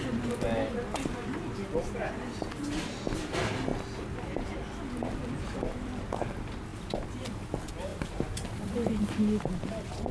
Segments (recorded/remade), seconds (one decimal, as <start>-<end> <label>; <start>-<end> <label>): 0.0-7.9 recorded; 7.9-9.0 remade; 9.0-10.1 recorded